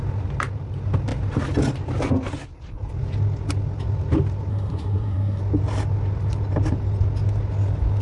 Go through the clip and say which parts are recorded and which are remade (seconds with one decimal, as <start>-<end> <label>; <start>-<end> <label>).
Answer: 0.0-4.5 recorded; 4.5-5.4 remade; 5.4-8.0 recorded